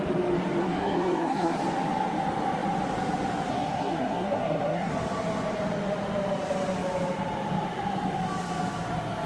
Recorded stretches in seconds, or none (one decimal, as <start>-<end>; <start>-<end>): 0.0-0.6; 1.6-3.5; 4.9-9.3